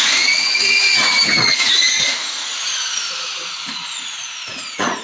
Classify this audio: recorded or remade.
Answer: remade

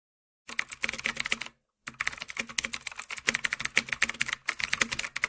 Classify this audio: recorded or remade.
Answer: recorded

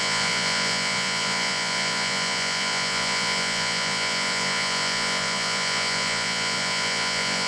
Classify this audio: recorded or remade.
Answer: remade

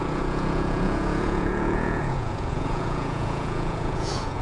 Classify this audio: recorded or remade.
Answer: remade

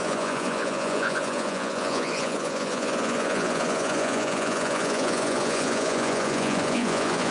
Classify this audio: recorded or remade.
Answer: remade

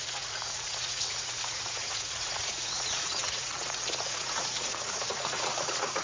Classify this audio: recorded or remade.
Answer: remade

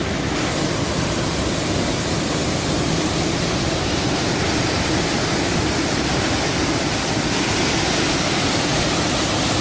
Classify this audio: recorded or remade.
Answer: recorded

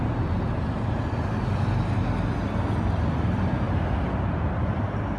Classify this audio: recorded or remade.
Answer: recorded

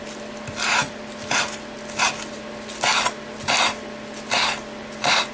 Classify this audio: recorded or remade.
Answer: recorded